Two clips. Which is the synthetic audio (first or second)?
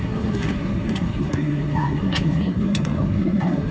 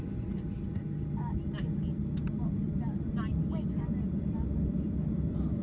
first